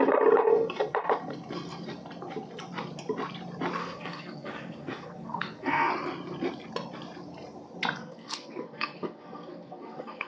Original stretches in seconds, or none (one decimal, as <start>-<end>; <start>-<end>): 0.0-3.8; 5.9-8.0